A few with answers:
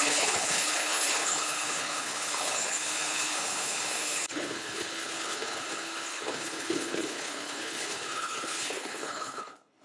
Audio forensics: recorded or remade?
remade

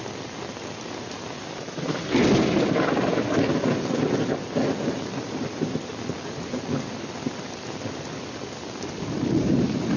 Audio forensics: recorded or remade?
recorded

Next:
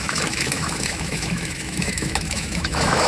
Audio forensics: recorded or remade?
remade